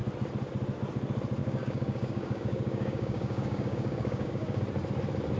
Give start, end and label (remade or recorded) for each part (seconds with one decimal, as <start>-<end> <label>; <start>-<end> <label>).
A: 0.0-1.4 recorded; 1.4-4.6 remade; 4.6-5.4 recorded